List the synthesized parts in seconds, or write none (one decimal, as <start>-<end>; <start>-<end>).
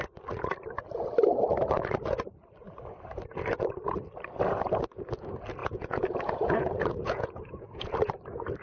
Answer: 5.6-7.9